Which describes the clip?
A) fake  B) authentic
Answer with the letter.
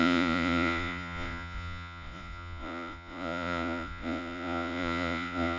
A